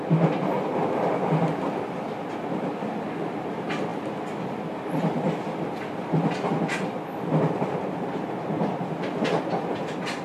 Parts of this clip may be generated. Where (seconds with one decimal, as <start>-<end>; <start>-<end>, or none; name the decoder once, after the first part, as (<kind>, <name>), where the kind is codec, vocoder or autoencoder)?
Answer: none